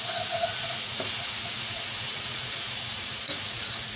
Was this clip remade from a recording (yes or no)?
yes